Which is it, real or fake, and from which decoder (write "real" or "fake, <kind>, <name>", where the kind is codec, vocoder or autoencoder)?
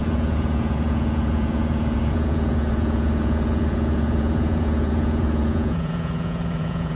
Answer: fake, vocoder, Vocos